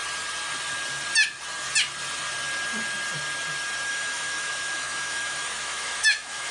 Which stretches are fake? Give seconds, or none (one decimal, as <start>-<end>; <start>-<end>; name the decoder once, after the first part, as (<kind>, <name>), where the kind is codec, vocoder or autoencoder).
3.9-6.5 (autoencoder, DAC-VAE)